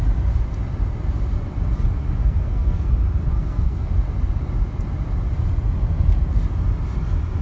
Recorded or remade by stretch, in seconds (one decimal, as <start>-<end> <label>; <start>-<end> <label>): 0.0-2.2 recorded; 2.2-2.9 remade; 2.9-3.3 recorded; 3.3-3.9 remade; 3.9-7.4 recorded